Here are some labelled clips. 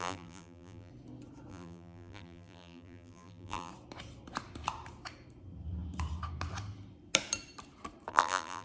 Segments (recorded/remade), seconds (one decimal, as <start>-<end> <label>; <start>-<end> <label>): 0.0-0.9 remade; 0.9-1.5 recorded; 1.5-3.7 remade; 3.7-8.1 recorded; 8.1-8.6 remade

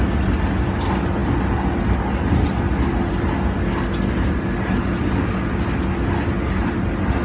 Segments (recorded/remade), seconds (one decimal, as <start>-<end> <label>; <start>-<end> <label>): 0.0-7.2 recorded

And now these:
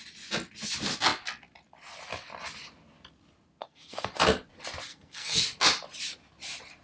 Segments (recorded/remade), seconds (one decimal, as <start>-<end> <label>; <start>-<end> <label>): 0.0-3.6 recorded; 3.6-4.1 remade; 4.1-4.9 recorded; 4.9-5.4 remade; 5.4-6.8 recorded

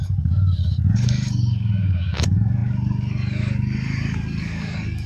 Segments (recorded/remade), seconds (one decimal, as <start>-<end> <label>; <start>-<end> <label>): 0.0-5.1 remade

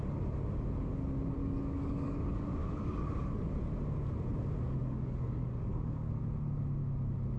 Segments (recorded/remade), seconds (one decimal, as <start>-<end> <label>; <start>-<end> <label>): 0.0-1.4 recorded; 1.4-3.5 remade; 3.5-4.8 recorded; 4.8-6.2 remade; 6.2-7.4 recorded

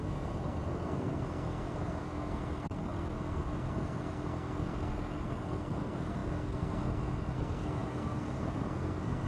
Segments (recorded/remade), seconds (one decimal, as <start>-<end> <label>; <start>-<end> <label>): 0.0-9.3 remade